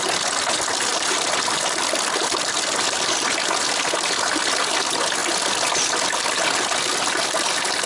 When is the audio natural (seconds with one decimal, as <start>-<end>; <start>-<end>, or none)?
0.0-0.9; 4.6-5.2; 6.0-7.9